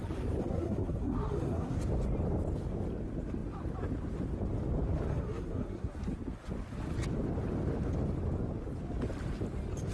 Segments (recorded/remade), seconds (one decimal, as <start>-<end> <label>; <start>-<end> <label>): 0.0-0.4 recorded; 0.4-1.8 remade; 1.8-5.1 recorded; 5.1-5.9 remade; 5.9-9.9 recorded